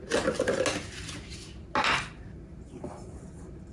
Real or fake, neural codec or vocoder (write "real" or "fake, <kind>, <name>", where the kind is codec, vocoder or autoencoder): real